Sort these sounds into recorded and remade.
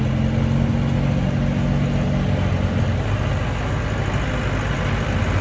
recorded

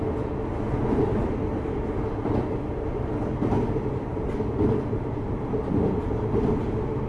recorded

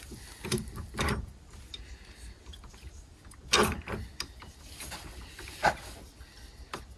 recorded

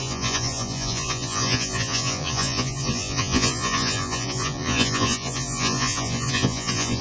remade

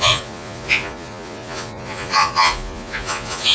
remade